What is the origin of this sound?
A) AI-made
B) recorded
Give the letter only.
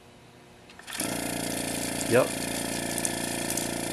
B